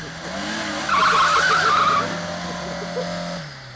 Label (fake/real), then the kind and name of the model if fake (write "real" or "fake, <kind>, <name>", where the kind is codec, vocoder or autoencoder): real